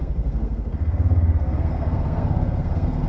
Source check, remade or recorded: remade